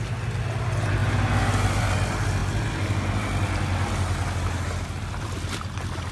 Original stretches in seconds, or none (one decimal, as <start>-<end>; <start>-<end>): 0.0-6.1